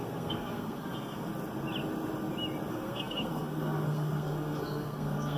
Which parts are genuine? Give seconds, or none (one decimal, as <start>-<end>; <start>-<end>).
1.3-2.7